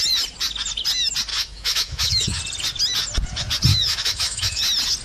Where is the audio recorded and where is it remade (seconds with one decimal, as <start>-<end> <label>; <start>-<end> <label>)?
0.0-1.3 recorded; 1.3-2.4 remade; 2.4-3.7 recorded; 3.7-4.6 remade; 4.6-5.0 recorded